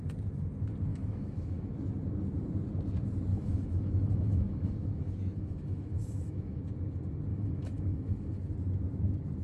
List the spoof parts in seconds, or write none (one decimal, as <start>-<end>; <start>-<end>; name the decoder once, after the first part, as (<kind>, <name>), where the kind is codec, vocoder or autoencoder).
0.9-1.7 (autoencoder, DAC-VAE); 3.3-6.6; 7.3-8.5